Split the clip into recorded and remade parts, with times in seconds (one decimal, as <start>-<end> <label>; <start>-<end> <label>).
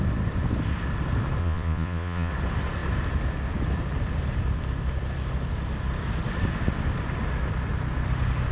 0.0-1.4 recorded; 1.4-2.3 remade; 2.3-8.5 recorded